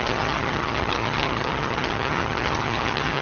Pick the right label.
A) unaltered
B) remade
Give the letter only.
B